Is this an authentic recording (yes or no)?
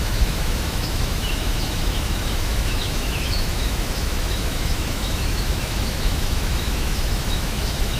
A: no